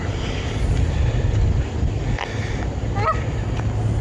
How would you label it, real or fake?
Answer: real